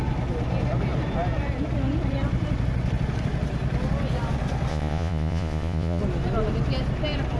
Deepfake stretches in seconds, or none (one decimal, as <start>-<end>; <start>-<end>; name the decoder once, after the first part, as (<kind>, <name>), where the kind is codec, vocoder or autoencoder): 4.7-6.0 (vocoder, Vocos)